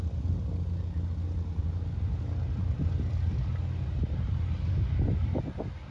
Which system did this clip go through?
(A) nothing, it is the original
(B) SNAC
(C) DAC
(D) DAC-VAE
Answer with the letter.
A